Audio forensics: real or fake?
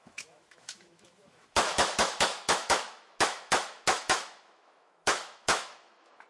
fake